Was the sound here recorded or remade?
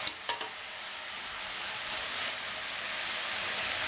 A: recorded